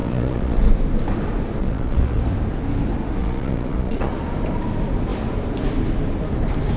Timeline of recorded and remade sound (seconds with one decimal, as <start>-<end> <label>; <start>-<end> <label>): 0.0-0.7 remade; 0.7-1.6 recorded; 1.6-2.2 remade; 2.2-3.2 recorded; 3.2-4.1 remade; 4.1-6.8 recorded